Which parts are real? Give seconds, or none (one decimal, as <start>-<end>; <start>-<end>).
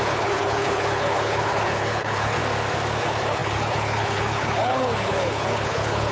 2.4-3.0